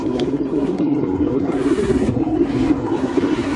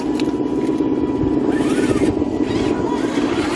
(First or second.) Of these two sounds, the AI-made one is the first